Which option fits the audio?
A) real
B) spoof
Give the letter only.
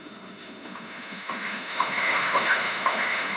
B